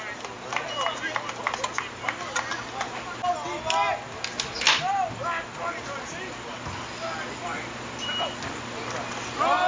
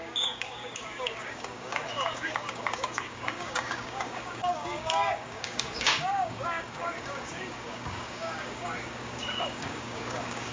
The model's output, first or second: second